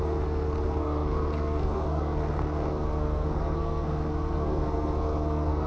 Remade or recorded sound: remade